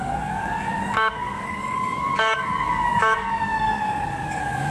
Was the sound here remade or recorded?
remade